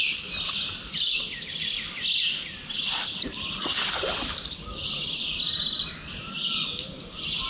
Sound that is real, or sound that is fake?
real